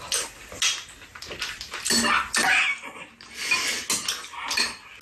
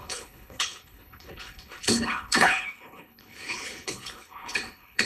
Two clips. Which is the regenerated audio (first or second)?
second